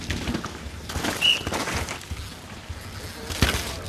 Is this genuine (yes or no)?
yes